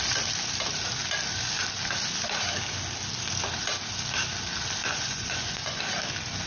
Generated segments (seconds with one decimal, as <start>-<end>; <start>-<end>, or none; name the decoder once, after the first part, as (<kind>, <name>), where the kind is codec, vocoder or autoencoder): 4.8-5.8 (vocoder, Vocos)